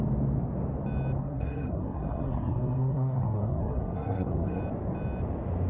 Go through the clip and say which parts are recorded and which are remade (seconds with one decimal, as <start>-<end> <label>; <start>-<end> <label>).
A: 0.0-1.2 recorded; 1.2-4.6 remade; 4.6-5.7 recorded

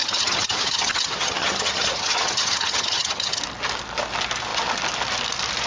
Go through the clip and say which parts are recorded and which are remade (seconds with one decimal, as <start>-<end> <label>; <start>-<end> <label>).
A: 0.0-3.4 remade; 3.4-5.7 recorded